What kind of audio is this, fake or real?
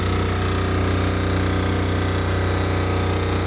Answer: real